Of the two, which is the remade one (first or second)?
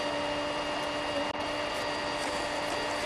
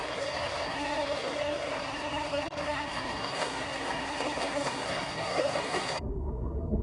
second